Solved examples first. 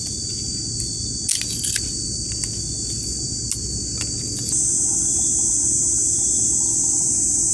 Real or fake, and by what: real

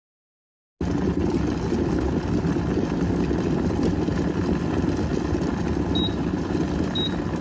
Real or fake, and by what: real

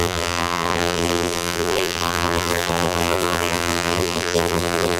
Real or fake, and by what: fake, vocoder, BigVGAN v2